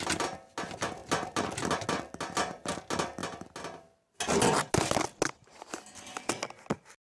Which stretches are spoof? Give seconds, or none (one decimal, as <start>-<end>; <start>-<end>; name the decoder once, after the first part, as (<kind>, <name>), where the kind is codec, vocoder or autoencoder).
none